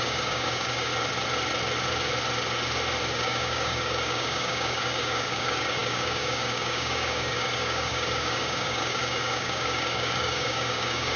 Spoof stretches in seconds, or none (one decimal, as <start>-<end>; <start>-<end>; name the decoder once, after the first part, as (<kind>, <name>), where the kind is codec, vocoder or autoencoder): 0.0-0.9 (codec, DAC); 3.1-11.2